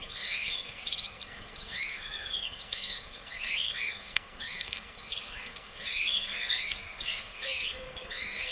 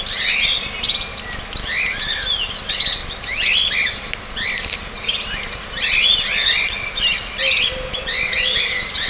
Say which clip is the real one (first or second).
second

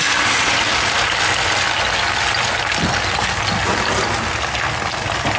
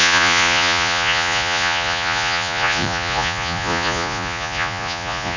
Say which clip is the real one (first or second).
first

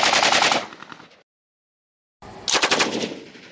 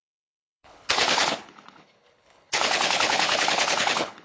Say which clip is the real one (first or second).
first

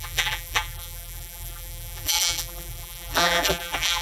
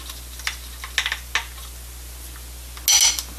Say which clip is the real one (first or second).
second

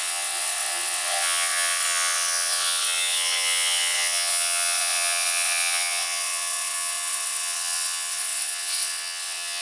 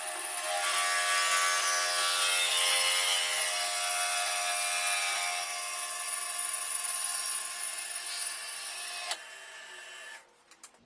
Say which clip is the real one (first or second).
second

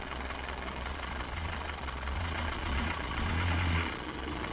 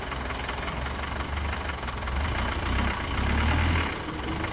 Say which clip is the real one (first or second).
second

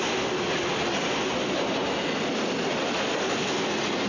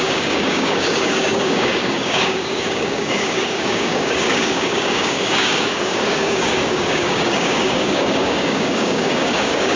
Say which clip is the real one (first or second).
first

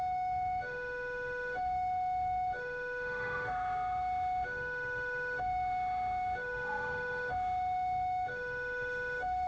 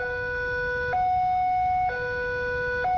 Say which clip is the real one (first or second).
second